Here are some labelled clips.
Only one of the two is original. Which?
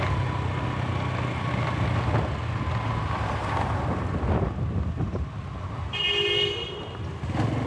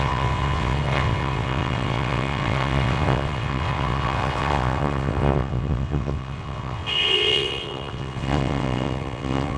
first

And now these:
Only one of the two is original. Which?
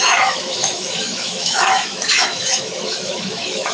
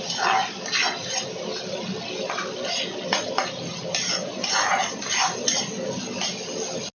second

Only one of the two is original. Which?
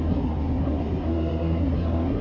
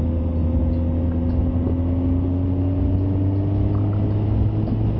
second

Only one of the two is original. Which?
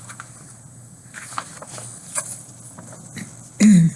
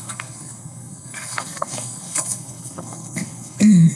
first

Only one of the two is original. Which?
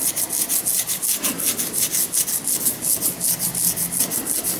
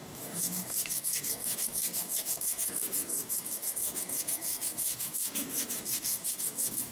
first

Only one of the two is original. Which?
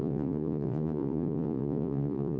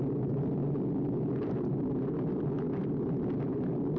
second